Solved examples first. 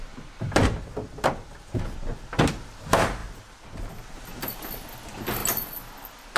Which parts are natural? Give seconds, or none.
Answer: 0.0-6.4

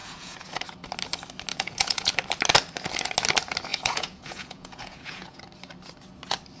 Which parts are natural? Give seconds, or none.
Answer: 0.5-1.5; 2.1-3.7; 5.4-6.6

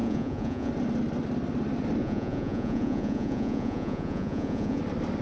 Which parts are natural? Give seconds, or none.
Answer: 0.7-2.0; 4.8-5.2

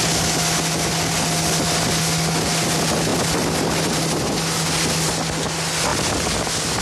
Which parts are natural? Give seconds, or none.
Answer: 0.0-6.8

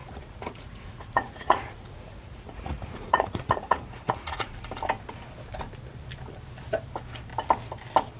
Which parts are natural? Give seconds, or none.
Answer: 4.7-8.2

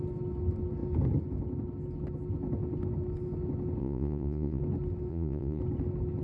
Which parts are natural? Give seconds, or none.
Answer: 0.0-3.8; 4.6-5.1; 5.6-6.2

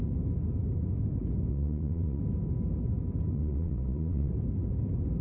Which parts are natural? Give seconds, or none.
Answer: 0.0-1.5; 2.2-3.3; 4.3-5.2